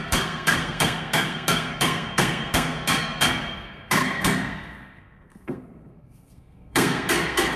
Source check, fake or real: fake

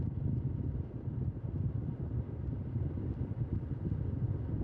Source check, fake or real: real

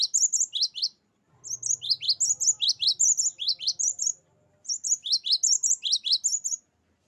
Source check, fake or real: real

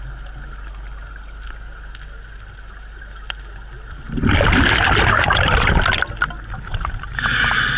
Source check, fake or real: real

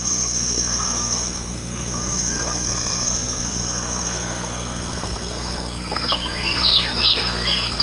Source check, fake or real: fake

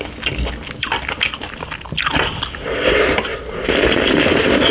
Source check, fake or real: real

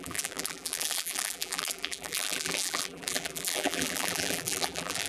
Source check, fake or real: fake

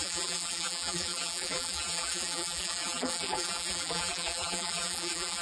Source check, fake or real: fake